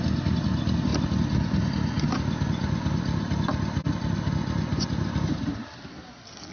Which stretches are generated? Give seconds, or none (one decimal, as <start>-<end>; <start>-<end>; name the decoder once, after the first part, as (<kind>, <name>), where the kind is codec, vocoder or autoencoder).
none